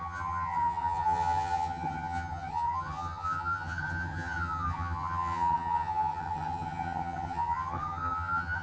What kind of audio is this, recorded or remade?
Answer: remade